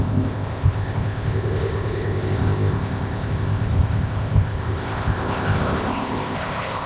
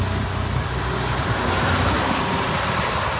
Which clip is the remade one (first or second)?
first